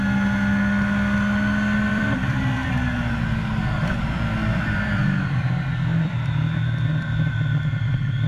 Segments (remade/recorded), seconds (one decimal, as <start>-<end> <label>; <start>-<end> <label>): 0.0-1.9 recorded; 1.9-2.7 remade; 2.7-4.5 recorded; 4.5-5.5 remade; 5.5-5.9 recorded; 5.9-7.3 remade; 7.3-8.3 recorded